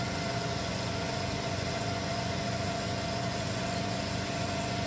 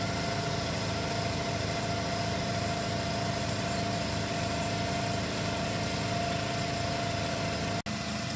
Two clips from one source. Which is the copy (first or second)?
first